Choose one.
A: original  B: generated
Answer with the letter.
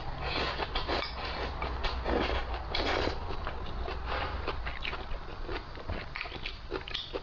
A